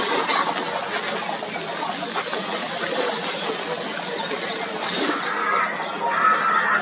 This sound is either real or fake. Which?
real